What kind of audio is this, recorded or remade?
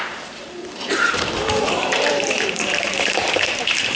remade